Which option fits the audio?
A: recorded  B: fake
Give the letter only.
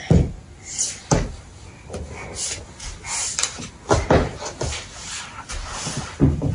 A